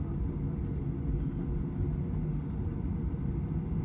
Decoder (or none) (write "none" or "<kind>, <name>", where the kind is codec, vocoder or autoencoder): none